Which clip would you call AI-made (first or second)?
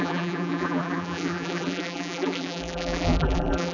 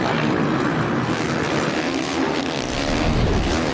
first